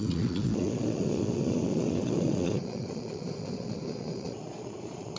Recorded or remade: remade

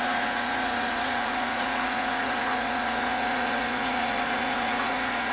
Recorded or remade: remade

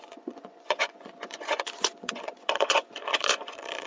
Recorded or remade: remade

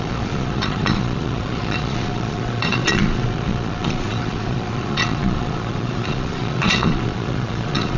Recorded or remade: remade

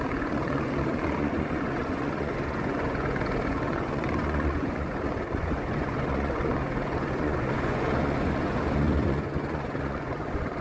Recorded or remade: remade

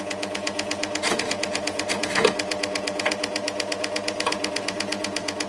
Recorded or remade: remade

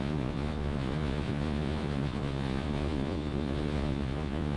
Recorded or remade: remade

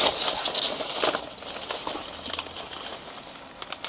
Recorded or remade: recorded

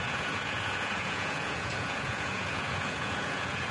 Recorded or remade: remade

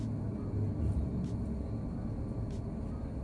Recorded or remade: recorded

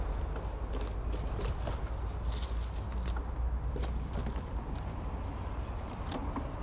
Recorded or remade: recorded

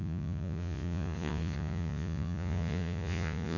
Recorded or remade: remade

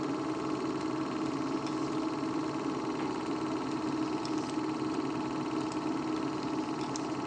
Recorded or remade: recorded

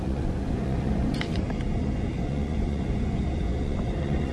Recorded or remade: remade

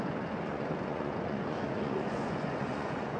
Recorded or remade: remade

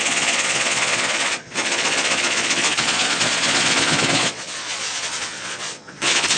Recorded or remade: remade